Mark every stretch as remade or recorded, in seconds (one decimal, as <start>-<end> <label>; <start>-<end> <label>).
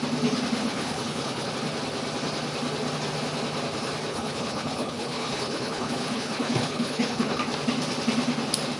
0.0-0.6 recorded; 0.6-1.5 remade; 1.5-4.1 recorded; 4.1-7.4 remade; 7.4-8.8 recorded